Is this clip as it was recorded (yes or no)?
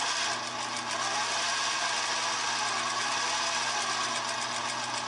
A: yes